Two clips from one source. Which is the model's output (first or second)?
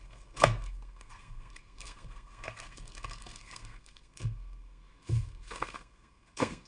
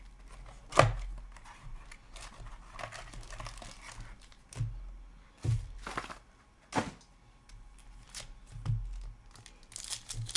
first